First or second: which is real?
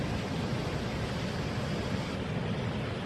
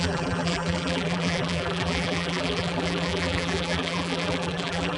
first